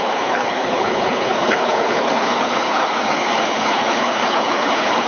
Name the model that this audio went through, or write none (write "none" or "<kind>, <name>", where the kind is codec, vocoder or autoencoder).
codec, HILCodec